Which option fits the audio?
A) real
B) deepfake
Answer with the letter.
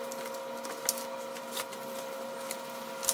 A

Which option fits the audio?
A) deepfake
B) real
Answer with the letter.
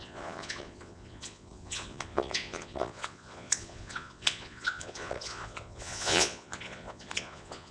A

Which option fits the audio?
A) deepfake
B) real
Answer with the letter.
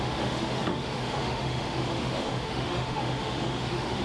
A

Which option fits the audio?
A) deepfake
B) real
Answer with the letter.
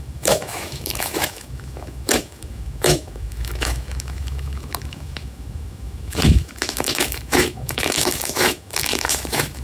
A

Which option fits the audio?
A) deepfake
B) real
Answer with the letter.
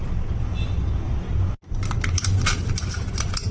B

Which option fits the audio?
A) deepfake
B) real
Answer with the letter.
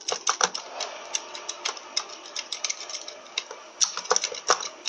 B